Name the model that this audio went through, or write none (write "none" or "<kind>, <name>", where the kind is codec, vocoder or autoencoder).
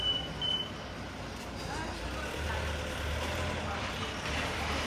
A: none